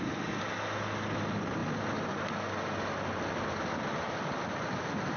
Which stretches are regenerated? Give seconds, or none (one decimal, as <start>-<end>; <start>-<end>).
none